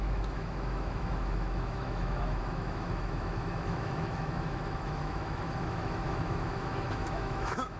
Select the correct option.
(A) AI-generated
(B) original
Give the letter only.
A